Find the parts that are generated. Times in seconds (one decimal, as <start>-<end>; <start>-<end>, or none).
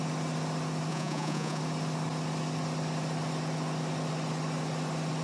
0.9-1.6